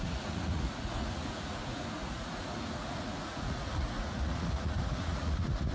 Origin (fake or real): fake